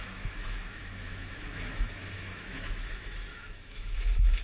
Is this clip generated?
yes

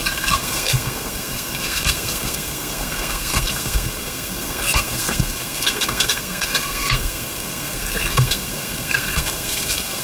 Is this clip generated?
yes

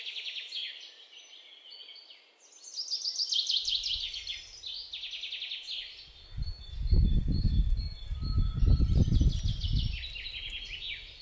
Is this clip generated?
no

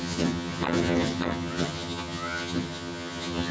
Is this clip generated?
yes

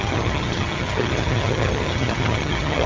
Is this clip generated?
yes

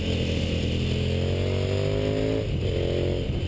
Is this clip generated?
no